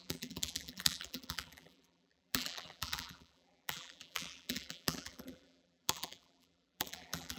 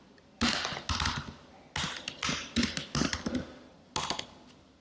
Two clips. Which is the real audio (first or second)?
second